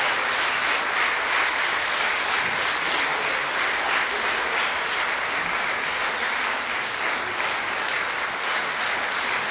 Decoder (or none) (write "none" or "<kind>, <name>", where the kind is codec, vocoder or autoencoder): none